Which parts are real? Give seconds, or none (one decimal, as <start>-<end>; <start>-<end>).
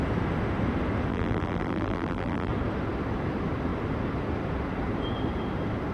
0.0-1.1; 2.5-5.9